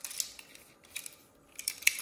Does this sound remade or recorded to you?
recorded